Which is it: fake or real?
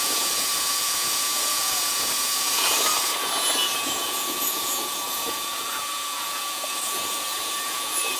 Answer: fake